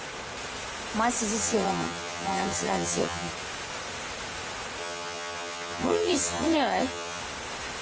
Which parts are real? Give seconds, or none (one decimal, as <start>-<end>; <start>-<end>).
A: 0.0-1.4; 3.3-4.8; 7.2-7.8